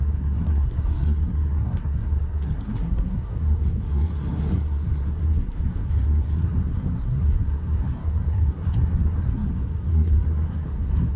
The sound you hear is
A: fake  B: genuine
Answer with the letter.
A